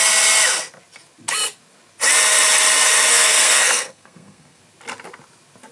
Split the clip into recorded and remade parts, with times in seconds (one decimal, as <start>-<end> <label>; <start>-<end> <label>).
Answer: 0.0-3.1 recorded; 3.1-4.6 remade; 4.6-5.7 recorded